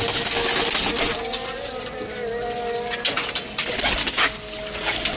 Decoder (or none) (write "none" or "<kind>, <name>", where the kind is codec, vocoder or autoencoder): none